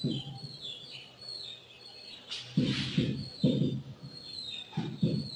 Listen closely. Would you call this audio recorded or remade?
recorded